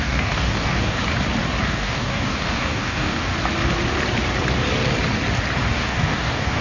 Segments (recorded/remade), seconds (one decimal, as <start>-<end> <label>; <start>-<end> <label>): 0.0-1.0 remade; 1.0-1.6 recorded; 1.6-3.3 remade; 3.3-5.7 recorded; 5.7-6.6 remade